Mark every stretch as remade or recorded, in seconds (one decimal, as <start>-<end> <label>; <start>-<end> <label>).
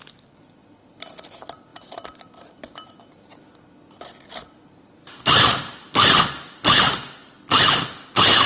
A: 0.0-8.5 recorded